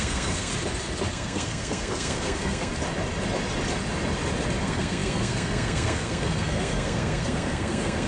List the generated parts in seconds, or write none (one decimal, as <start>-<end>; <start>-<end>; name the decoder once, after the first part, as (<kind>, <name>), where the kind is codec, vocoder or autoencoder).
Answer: 0.0-0.5 (codec, SNAC); 1.1-2.7; 4.6-8.1